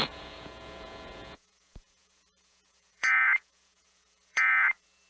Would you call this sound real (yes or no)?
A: no